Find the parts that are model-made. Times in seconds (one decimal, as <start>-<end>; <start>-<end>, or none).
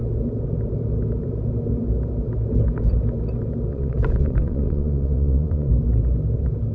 3.7-5.7